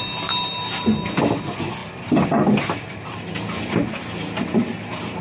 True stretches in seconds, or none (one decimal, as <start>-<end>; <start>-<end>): 0.0-5.2